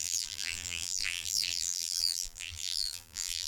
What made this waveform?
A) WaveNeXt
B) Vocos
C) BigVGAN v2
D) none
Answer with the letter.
C